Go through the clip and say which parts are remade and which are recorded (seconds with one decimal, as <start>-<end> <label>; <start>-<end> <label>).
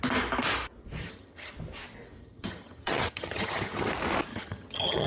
0.0-1.0 recorded; 1.0-1.5 remade; 1.5-2.2 recorded; 2.2-3.9 remade; 3.9-4.3 recorded; 4.3-5.1 remade